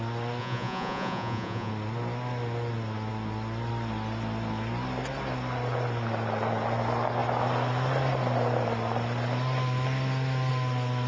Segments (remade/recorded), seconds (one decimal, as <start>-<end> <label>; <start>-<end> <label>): 0.0-0.4 recorded; 0.4-1.7 remade; 1.7-11.1 recorded